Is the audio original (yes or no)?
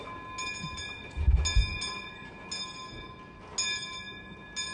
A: yes